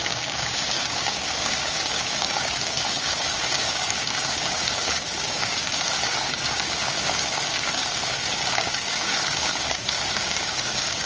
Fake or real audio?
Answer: fake